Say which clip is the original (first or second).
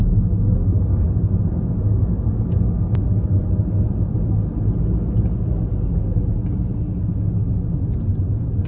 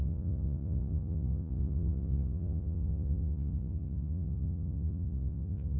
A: first